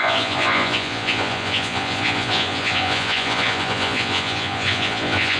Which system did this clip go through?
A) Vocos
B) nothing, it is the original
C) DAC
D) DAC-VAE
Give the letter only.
A